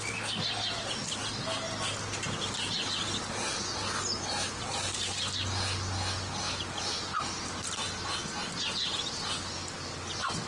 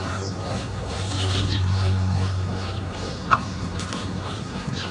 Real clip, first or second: first